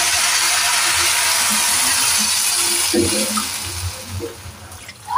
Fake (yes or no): no